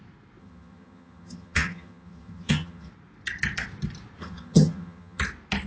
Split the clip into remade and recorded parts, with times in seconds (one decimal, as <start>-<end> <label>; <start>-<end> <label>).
0.0-0.4 recorded; 0.4-2.9 remade; 2.9-4.2 recorded; 4.2-5.2 remade; 5.2-5.7 recorded